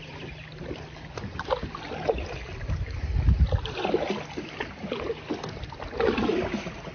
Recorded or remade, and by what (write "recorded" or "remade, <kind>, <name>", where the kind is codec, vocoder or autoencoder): recorded